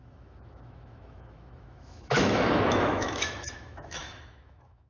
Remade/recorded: remade